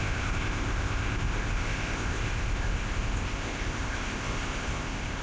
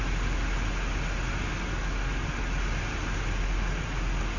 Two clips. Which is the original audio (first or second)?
second